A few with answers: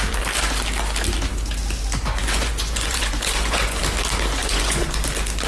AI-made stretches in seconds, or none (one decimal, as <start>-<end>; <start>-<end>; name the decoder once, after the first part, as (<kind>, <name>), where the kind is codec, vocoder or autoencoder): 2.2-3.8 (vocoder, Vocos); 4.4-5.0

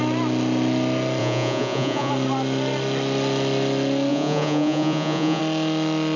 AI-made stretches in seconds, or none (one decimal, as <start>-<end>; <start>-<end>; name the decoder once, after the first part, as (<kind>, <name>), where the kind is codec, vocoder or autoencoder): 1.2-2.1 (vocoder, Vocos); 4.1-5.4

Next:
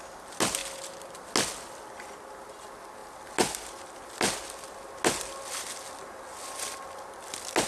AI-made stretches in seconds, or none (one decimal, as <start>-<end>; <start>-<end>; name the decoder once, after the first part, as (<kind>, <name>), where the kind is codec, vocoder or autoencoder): none